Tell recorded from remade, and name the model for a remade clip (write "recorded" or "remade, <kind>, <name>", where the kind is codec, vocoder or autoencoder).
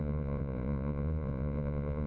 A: remade, vocoder, Vocos